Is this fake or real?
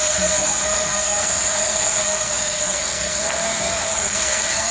fake